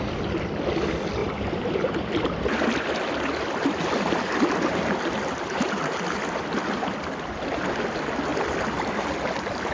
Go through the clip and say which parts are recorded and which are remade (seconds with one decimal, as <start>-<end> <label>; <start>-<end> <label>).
0.0-1.2 recorded; 1.2-5.7 remade; 5.7-9.7 recorded